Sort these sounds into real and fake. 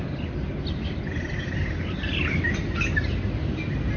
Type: real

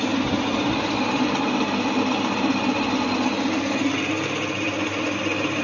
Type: real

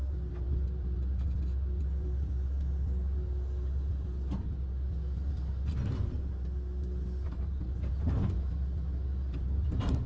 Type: real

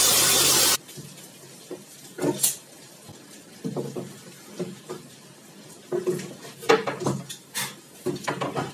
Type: real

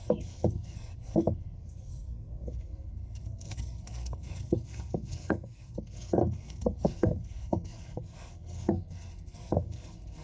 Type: fake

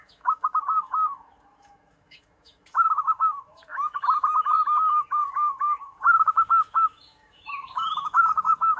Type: fake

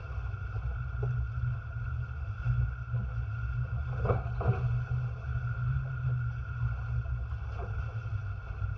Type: real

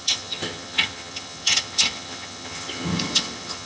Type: fake